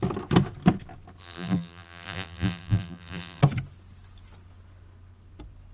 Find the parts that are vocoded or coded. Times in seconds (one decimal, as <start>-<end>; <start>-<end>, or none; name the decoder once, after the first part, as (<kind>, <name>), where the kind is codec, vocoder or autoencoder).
1.2-3.4 (vocoder, BigVGAN v2)